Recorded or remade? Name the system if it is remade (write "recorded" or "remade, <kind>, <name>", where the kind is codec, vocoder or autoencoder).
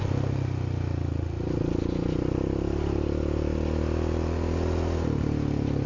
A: recorded